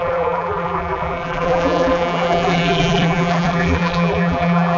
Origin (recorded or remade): remade